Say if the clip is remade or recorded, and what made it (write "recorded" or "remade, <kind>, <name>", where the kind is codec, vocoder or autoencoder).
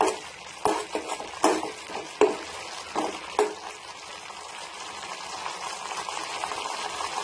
recorded